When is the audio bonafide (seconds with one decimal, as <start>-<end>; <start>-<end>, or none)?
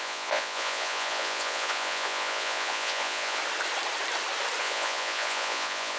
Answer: 3.4-4.6